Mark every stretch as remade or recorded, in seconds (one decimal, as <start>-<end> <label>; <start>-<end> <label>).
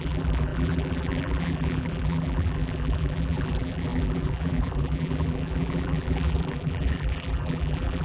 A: 0.0-8.0 remade